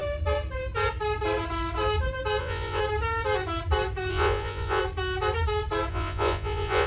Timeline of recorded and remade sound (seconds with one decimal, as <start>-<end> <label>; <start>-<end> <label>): 0.0-2.4 recorded; 2.4-2.8 remade; 2.8-4.1 recorded; 4.1-4.8 remade; 4.8-5.9 recorded; 5.9-6.9 remade